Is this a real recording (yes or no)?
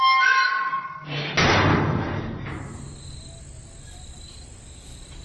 yes